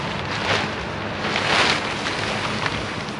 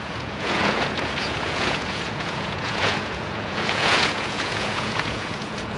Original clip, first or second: first